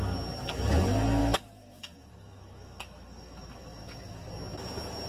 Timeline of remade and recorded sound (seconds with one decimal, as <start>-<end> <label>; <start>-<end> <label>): 0.0-1.2 recorded; 1.2-4.3 remade; 4.3-5.1 recorded